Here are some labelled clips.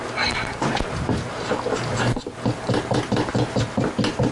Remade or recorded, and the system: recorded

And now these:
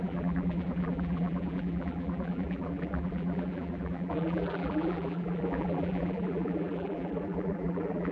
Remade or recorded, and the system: remade, vocoder, BigVGAN v2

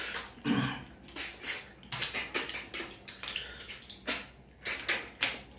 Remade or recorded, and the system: recorded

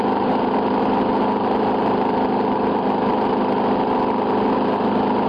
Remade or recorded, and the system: recorded